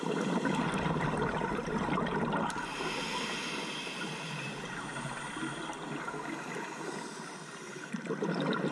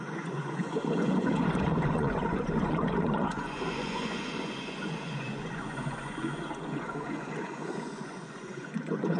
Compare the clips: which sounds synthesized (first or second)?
second